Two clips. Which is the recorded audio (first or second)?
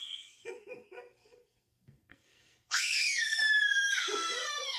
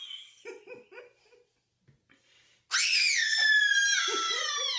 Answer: second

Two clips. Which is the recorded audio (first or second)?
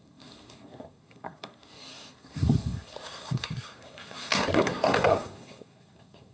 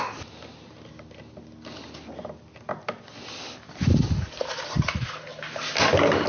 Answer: second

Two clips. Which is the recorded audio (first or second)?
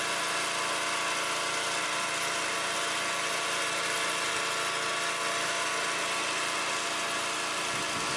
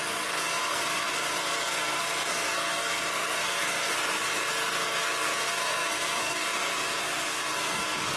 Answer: first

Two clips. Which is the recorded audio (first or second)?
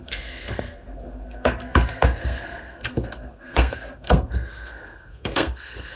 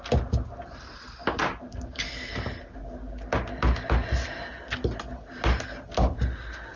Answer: second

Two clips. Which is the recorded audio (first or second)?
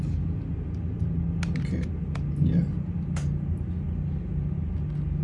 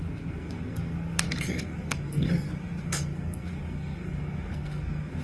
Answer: first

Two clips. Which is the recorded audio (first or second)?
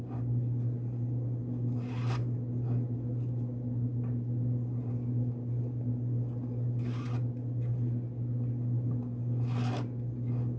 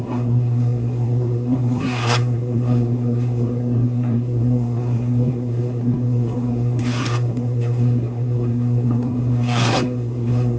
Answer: first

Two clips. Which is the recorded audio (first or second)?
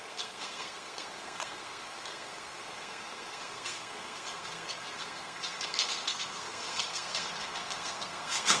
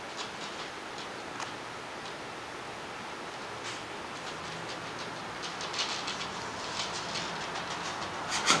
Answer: second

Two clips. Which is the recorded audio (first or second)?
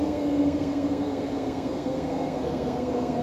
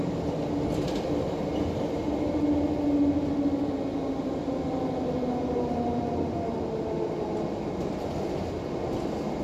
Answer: second